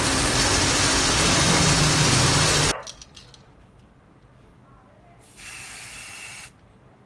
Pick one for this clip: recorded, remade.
recorded